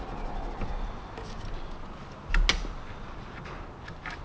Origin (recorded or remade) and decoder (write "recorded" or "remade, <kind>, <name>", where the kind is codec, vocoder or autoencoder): recorded